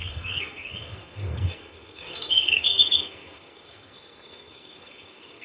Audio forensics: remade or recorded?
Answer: remade